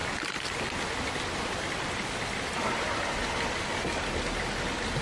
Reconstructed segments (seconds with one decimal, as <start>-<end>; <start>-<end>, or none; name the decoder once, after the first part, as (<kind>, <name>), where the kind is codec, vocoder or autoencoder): none